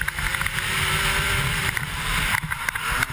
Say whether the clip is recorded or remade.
remade